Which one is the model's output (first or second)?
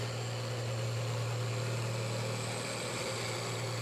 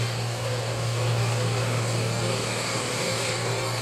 second